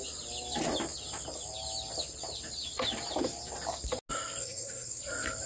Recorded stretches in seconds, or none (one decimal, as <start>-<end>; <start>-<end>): 0.0-4.4; 5.0-5.5